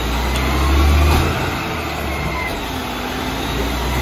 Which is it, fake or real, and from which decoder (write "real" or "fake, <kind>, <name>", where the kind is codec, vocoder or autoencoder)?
real